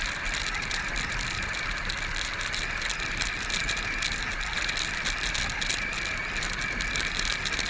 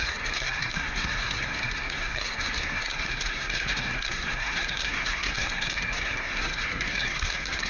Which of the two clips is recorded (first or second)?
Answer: first